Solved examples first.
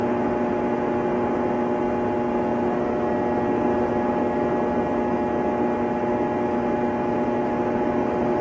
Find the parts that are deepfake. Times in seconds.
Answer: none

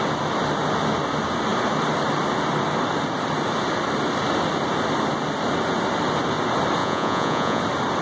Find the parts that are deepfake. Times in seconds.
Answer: 6.8-7.6 (vocoder, Vocos)